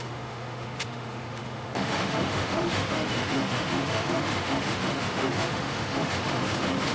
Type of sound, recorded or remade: remade